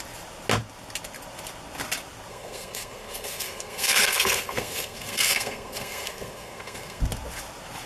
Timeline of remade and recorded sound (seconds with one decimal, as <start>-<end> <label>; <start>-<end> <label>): 0.0-2.3 recorded; 2.3-7.0 remade; 7.0-7.9 recorded